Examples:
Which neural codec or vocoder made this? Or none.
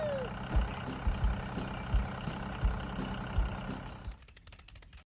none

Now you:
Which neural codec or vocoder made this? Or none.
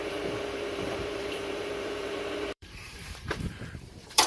vocoder, BigVGAN v2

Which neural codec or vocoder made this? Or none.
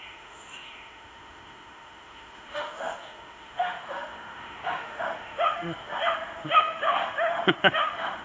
autoencoder, DAC-VAE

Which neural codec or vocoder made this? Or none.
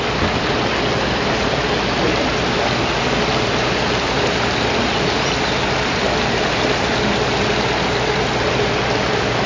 none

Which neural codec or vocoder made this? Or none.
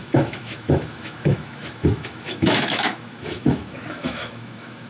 autoencoder, DAC-VAE